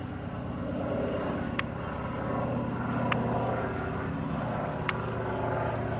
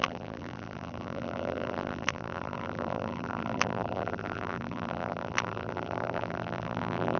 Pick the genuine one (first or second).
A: first